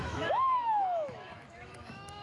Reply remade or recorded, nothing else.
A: remade